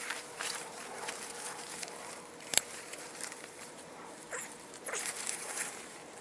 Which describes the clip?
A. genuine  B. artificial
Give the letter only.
B